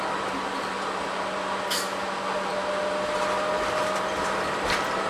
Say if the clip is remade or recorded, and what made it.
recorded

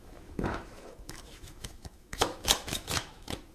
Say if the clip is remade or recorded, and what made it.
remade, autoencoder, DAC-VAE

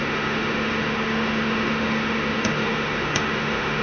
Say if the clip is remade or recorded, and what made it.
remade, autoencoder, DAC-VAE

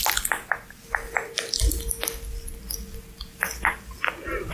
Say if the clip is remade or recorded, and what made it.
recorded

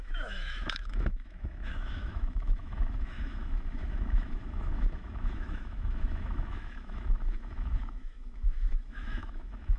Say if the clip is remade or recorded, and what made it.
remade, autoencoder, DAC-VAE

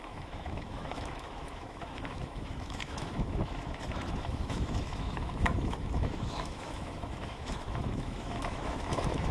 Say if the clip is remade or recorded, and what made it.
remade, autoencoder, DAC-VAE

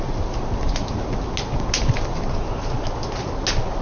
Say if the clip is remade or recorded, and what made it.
recorded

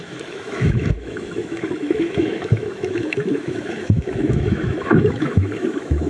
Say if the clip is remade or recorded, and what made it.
remade, autoencoder, DAC-VAE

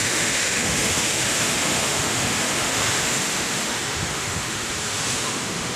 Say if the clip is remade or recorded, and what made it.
remade, autoencoder, DAC-VAE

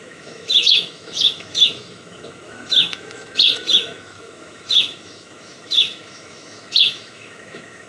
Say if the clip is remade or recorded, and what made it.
remade, autoencoder, DAC-VAE